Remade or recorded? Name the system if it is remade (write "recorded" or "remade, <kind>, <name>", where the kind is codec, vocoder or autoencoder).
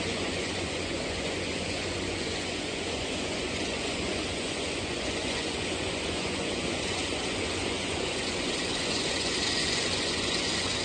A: remade, vocoder, Vocos